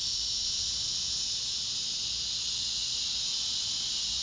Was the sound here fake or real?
real